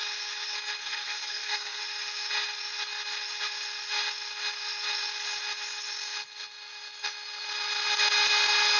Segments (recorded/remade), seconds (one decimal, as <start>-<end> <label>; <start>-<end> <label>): 0.0-0.8 recorded; 0.8-1.8 remade; 1.8-8.8 recorded

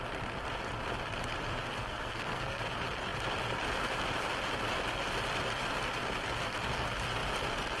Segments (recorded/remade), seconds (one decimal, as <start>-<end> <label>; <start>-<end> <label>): 0.0-1.8 recorded; 1.8-2.6 remade; 2.6-7.8 recorded